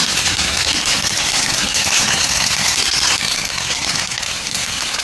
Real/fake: fake